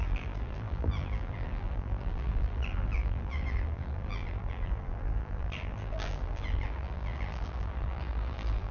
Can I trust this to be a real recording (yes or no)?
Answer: no